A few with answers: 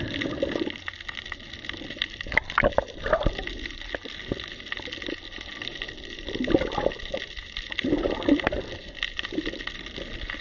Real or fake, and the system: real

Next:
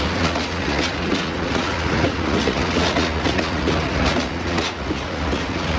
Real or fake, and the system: fake, vocoder, Vocos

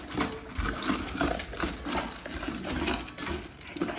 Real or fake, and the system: real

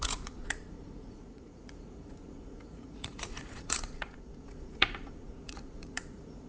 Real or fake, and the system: fake, vocoder, Vocos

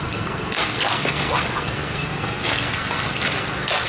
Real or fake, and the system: fake, codec, SNAC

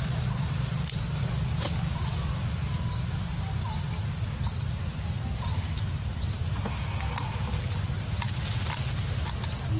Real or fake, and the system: real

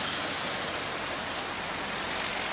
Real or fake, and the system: real